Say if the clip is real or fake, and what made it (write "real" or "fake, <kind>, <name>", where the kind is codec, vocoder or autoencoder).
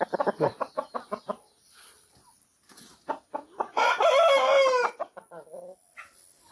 real